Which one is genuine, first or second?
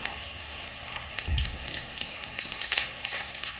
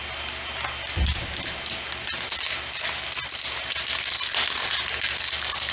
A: second